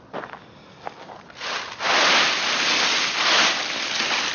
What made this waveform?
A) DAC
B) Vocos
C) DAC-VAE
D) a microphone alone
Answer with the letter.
D